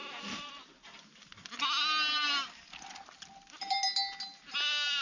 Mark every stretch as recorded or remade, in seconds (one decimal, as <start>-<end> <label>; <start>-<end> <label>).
0.0-5.0 recorded